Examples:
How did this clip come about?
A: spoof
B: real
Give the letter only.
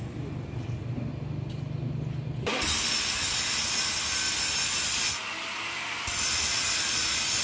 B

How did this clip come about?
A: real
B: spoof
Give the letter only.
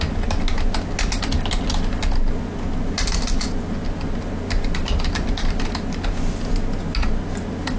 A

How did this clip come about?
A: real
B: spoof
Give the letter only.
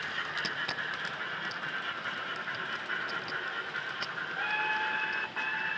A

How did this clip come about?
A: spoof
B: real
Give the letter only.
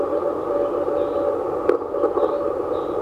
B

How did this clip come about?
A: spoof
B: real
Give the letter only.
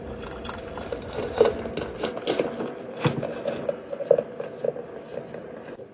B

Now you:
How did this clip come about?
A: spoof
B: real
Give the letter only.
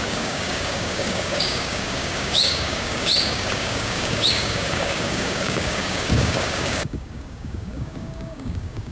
A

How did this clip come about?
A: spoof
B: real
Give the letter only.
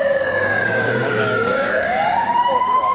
A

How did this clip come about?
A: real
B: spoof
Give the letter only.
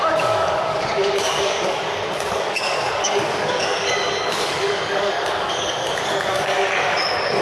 B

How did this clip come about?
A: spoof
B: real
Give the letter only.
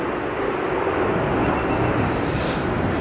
B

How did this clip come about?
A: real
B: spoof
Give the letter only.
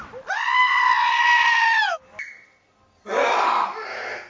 A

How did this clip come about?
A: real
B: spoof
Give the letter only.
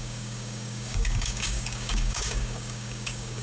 B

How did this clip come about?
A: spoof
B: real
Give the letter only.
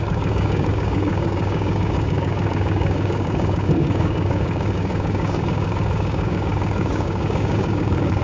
A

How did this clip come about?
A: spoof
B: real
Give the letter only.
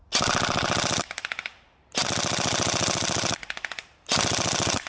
B